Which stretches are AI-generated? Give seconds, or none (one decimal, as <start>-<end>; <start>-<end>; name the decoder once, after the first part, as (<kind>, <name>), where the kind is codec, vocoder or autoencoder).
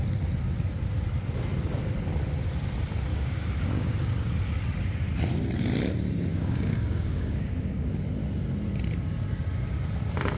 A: 3.1-3.9 (codec, DAC); 6.3-8.0